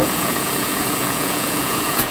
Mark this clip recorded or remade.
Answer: remade